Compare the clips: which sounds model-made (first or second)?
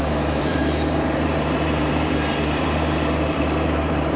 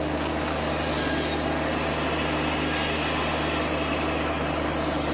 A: first